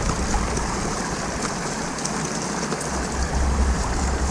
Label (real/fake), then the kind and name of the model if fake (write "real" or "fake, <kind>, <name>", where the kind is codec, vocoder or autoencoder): real